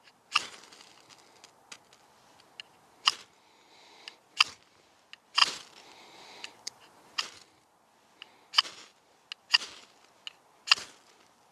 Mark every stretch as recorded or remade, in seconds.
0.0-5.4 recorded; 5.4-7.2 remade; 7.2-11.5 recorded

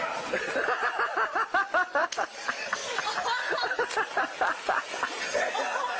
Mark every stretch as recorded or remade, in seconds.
0.0-6.0 recorded

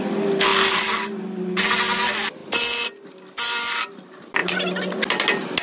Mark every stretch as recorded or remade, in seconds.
0.0-5.6 recorded

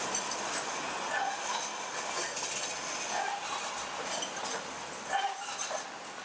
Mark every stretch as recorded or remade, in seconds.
0.0-6.2 recorded